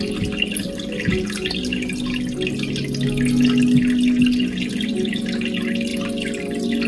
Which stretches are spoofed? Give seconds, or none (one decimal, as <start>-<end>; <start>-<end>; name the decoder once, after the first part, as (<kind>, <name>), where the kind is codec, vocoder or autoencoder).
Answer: none